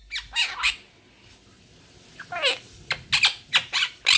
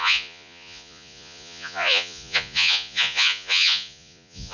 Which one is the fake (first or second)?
second